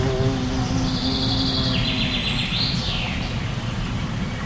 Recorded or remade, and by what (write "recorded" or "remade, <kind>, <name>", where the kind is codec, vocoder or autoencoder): recorded